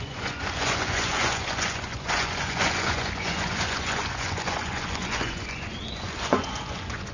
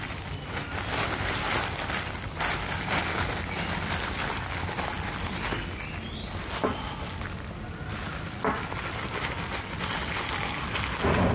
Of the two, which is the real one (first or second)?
second